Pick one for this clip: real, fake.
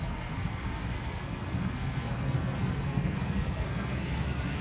fake